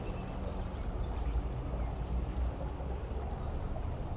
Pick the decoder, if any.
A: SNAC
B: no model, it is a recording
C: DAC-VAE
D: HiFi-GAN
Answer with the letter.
B